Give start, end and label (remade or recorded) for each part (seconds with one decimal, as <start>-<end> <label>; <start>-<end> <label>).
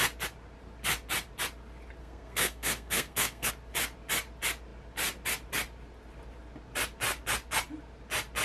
0.0-2.0 recorded; 2.0-3.5 remade; 3.5-8.4 recorded